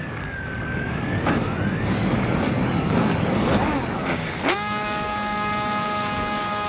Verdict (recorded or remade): remade